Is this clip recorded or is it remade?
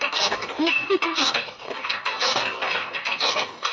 remade